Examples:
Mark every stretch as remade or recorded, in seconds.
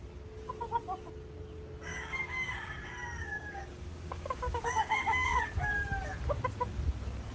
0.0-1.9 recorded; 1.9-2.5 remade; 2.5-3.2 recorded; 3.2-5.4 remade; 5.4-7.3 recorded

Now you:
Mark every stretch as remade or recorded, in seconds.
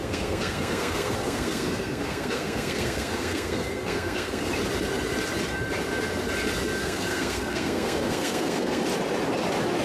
0.0-4.5 remade; 4.5-6.8 recorded; 6.8-8.8 remade; 8.8-9.8 recorded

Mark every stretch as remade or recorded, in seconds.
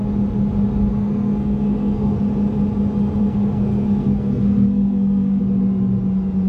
0.0-0.9 recorded; 0.9-2.2 remade; 2.2-3.2 recorded; 3.2-5.4 remade; 5.4-6.5 recorded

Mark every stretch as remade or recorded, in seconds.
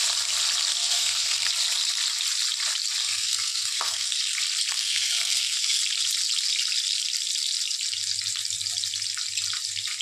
0.0-0.8 recorded; 0.8-1.5 remade; 1.5-3.0 recorded; 3.0-4.2 remade; 4.2-4.7 recorded; 4.7-5.8 remade; 5.8-10.0 recorded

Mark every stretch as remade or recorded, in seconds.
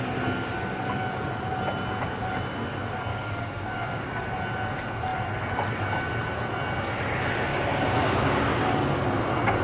0.0-3.1 recorded; 3.1-4.2 remade; 4.2-7.5 recorded; 7.5-8.6 remade; 8.6-9.6 recorded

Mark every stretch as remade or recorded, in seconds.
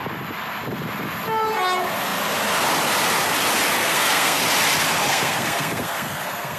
0.0-3.8 recorded; 3.8-4.4 remade; 4.4-5.1 recorded; 5.1-6.6 remade